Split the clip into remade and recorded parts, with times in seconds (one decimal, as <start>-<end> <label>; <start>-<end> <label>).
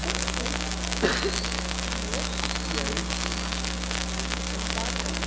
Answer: 0.0-5.3 recorded